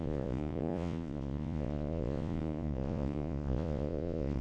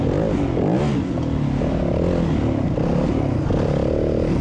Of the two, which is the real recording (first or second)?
second